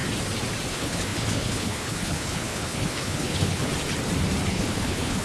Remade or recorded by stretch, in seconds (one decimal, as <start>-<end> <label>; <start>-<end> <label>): 0.0-0.7 recorded; 0.7-3.7 remade; 3.7-4.5 recorded; 4.5-5.2 remade